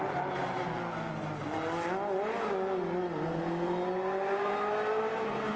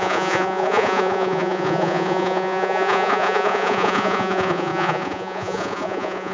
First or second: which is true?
first